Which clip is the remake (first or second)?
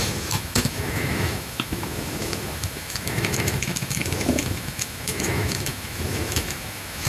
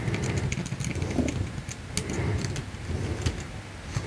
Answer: first